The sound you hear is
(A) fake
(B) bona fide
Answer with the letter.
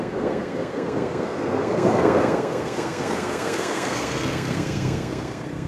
A